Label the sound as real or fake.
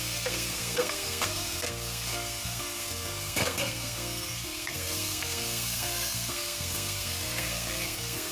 fake